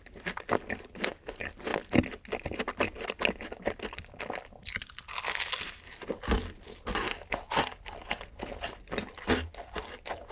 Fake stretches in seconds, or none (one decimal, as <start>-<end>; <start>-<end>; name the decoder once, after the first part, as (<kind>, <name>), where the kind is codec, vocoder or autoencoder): none

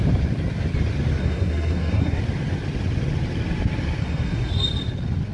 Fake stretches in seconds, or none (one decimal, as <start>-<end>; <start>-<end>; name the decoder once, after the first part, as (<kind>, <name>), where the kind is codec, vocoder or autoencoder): 1.2-2.2 (codec, SNAC); 4.0-4.5

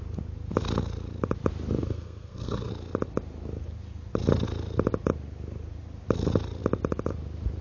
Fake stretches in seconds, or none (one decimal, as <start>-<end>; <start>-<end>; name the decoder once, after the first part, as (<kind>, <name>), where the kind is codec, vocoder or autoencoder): 1.8-2.7 (codec, SNAC)

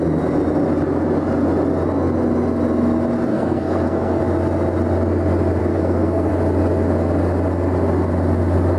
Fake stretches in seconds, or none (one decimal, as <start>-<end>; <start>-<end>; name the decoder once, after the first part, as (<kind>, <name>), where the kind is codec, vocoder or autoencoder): 3.3-4.2 (codec, SNAC); 5.6-6.3

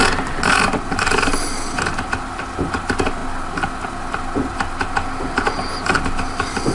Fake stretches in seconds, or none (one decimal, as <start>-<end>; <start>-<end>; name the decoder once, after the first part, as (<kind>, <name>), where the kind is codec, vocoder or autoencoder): none